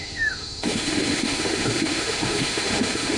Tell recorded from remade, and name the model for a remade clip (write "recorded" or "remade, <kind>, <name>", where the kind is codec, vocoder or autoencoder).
remade, autoencoder, DAC-VAE